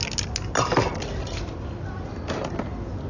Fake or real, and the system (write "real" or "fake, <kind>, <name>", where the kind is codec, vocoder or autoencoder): real